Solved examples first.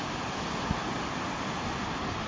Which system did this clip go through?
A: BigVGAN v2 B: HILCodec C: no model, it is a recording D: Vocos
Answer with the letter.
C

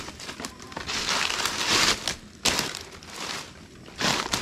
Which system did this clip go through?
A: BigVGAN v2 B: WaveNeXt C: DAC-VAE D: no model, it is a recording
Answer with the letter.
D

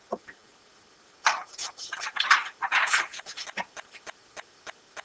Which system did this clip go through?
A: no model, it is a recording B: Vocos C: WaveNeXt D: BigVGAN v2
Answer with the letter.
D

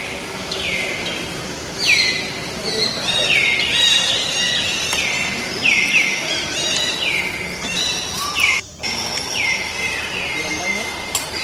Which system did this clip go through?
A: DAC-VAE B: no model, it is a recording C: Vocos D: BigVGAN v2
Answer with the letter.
B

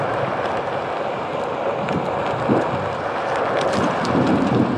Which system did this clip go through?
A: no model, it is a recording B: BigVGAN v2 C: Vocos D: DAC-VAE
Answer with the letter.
A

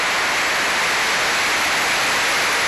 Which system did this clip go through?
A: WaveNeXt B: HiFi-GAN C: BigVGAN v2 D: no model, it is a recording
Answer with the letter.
D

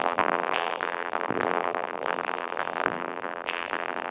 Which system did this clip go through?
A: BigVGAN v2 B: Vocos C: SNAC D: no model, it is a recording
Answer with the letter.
A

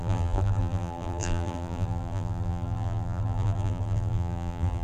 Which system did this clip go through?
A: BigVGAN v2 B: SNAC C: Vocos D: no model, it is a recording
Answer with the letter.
A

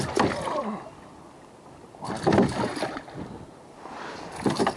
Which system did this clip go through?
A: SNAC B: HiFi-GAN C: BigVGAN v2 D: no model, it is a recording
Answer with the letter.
D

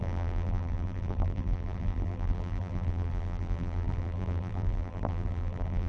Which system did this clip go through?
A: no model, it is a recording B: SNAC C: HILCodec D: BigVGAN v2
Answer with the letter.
D